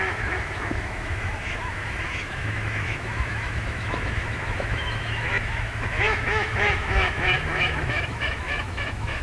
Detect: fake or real fake